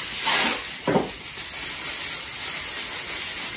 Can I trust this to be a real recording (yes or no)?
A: yes